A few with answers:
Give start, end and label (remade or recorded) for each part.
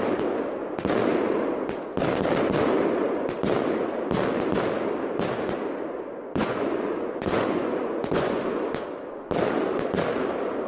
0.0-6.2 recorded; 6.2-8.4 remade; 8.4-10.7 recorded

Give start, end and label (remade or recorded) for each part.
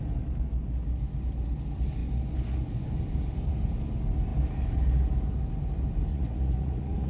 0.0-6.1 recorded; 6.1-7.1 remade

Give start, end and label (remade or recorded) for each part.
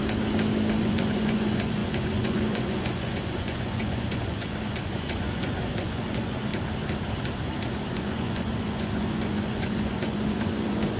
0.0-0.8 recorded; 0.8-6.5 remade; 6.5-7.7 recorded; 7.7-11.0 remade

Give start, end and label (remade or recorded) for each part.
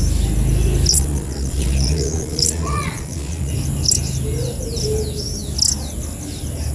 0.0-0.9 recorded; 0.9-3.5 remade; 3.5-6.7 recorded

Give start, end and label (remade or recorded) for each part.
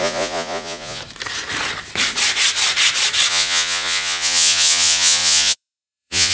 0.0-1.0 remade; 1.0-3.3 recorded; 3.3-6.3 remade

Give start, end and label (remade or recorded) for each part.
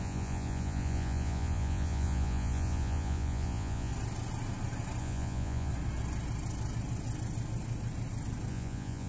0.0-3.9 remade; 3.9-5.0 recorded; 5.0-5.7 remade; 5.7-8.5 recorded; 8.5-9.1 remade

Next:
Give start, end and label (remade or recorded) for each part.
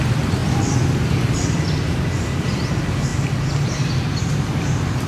0.0-5.1 recorded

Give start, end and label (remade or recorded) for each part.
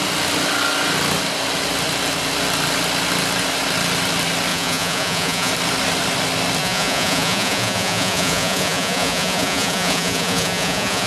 0.0-4.5 recorded; 4.5-5.5 remade; 5.5-6.6 recorded; 6.6-11.1 remade